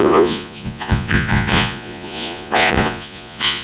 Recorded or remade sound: remade